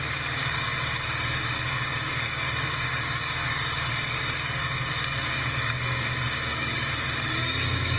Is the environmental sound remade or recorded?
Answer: remade